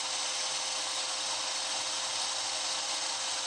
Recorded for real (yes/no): yes